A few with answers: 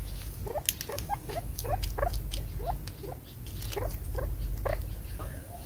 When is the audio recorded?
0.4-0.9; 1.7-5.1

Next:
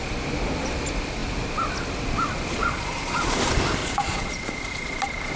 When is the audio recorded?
0.0-2.6; 3.4-3.8; 4.6-5.4

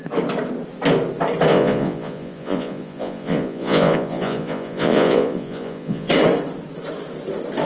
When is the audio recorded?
0.0-1.5; 6.1-7.7

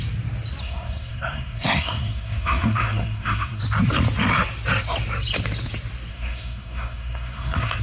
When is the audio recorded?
0.0-0.6; 3.6-6.1

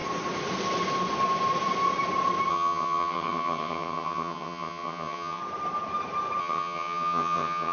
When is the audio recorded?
0.0-2.5; 5.4-6.4

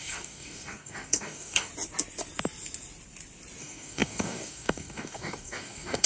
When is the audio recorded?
1.7-3.6

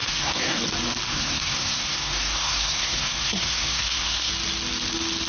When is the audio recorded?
0.6-1.1; 4.3-5.3